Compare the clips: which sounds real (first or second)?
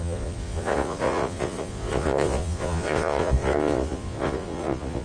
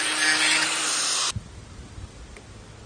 second